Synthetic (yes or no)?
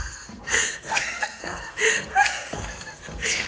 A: yes